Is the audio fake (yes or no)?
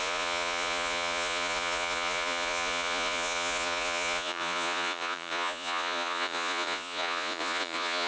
yes